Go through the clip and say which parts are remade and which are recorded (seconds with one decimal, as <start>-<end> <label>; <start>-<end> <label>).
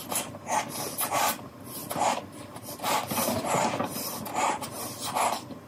0.0-5.7 recorded